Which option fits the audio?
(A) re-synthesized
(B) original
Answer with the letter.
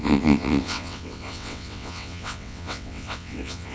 A